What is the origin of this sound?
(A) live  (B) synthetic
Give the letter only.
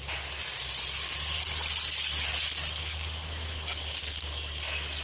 A